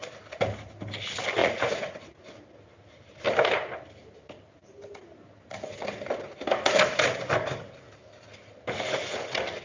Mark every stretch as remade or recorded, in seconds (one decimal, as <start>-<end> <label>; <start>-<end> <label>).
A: 0.0-1.4 recorded; 1.4-2.3 remade; 2.3-9.6 recorded